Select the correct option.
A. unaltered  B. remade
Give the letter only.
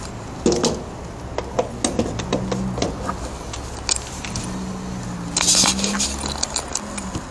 A